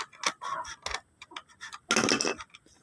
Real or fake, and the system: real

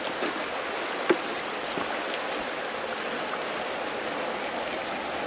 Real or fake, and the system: real